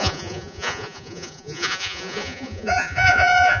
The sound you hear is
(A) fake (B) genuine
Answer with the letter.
A